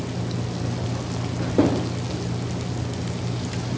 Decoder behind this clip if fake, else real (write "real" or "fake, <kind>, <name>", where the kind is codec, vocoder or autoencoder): real